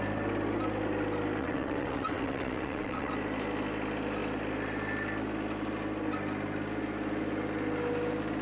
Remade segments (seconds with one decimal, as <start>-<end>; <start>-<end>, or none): 1.4-3.1